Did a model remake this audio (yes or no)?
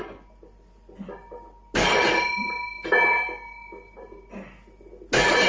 no